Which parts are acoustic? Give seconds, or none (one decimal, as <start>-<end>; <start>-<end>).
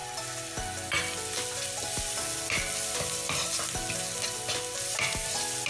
0.0-5.7